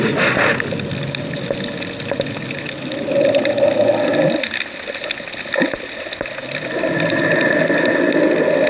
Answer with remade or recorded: recorded